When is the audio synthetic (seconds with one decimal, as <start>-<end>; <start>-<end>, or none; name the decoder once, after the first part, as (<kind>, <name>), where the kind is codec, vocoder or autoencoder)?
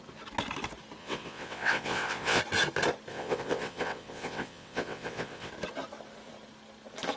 1.0-2.4 (vocoder, WaveNeXt); 3.1-5.5